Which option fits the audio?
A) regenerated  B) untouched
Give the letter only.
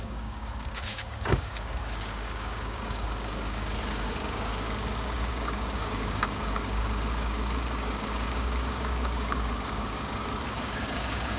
A